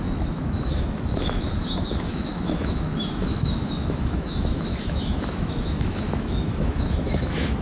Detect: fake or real fake